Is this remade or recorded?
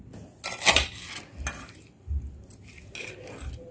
recorded